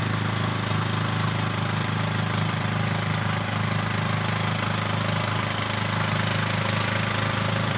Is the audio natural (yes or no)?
yes